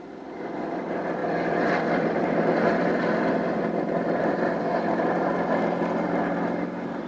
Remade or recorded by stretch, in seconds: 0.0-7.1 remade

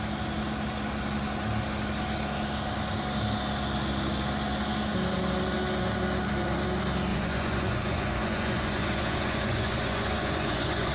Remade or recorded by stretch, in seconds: 0.0-7.1 recorded; 7.1-10.9 remade